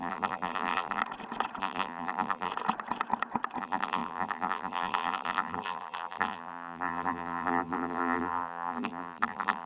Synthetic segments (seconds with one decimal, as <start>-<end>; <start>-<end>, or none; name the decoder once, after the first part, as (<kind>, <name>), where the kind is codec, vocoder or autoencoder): 0.0-1.0 (vocoder, BigVGAN v2); 1.6-2.5; 3.6-9.7